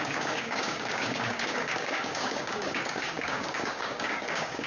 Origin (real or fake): fake